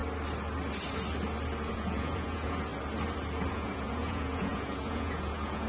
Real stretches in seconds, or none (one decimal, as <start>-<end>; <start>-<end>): 0.0-1.7; 2.7-3.5